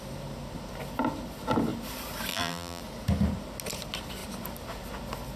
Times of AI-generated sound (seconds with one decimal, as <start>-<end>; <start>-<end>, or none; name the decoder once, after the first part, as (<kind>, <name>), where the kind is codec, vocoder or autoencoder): 2.3-2.8 (vocoder, BigVGAN v2)